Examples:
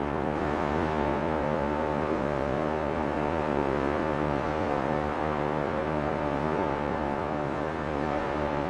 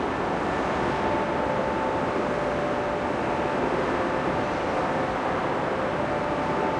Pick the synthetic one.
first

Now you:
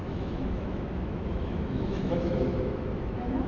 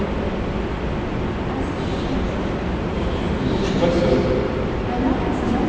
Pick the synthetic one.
first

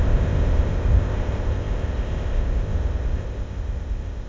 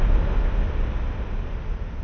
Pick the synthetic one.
first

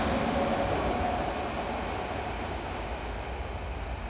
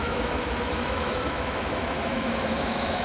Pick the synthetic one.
second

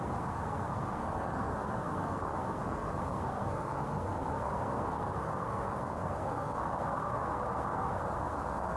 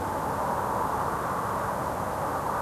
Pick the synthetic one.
first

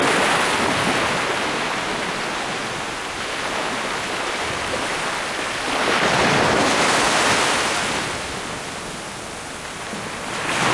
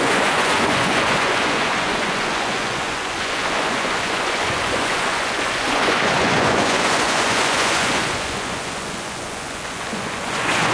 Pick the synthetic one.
second